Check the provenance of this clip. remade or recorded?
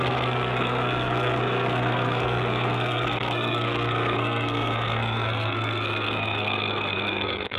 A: remade